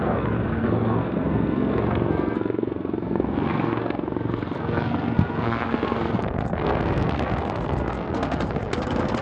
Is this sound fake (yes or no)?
yes